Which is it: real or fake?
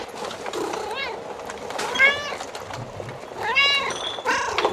real